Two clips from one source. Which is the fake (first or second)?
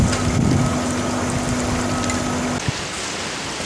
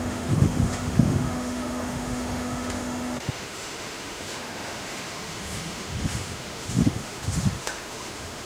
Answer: second